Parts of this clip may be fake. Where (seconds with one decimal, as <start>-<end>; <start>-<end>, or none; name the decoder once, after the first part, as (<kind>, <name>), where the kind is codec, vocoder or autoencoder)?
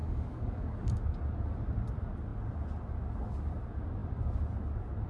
0.0-0.9 (codec, DAC)